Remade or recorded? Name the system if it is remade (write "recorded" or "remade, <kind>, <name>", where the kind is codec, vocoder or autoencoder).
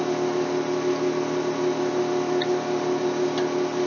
recorded